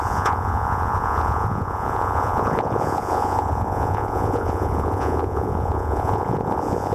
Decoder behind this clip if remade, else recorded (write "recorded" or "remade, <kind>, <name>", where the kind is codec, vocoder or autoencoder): remade, vocoder, Vocos